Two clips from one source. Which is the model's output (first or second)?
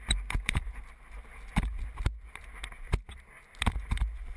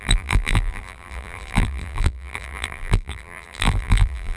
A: second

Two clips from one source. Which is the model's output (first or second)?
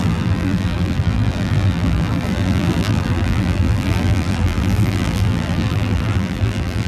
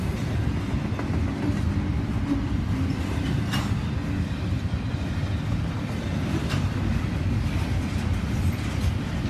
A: first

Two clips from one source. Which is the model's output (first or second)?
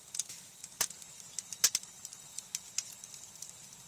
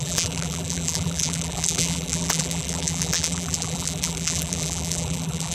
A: second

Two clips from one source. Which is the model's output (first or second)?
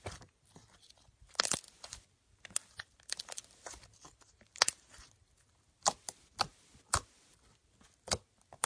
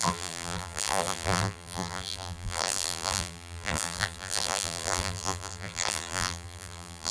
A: second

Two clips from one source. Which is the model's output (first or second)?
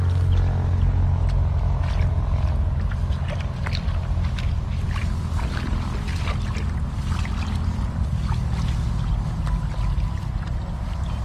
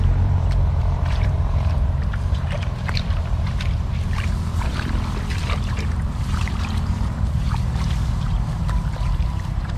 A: second